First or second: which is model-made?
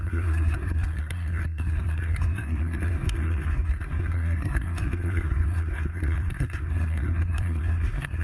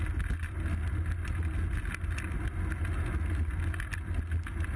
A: first